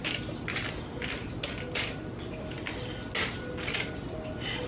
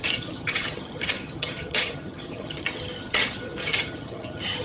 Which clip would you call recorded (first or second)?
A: first